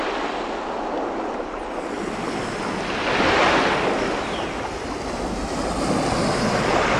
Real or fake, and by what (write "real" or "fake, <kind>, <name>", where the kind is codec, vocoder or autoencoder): real